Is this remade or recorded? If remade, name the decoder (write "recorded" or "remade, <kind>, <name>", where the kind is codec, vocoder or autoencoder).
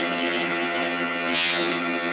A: remade, vocoder, HiFi-GAN